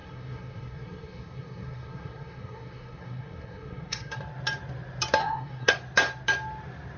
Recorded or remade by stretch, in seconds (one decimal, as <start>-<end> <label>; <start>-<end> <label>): 0.0-4.2 remade; 4.2-5.2 recorded; 5.2-5.7 remade; 5.7-7.0 recorded